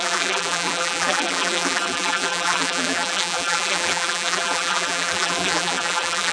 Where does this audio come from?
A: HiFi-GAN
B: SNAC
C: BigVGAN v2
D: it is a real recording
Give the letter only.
C